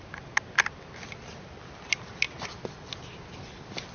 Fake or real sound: real